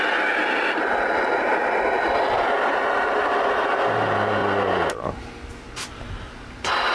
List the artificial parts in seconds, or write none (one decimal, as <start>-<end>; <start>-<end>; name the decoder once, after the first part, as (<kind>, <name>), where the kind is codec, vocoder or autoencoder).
4.4-4.9 (vocoder, BigVGAN v2)